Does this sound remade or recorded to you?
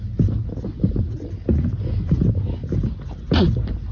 recorded